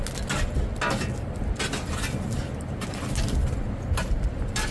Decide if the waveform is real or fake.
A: real